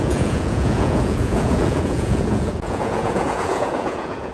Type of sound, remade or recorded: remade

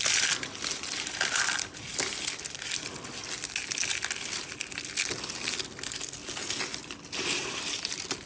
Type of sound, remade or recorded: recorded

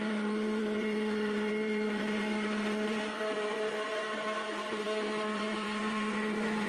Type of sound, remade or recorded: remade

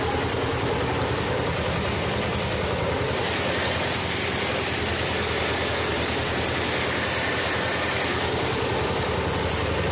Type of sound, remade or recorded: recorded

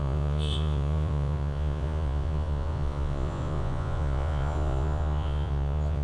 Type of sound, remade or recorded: remade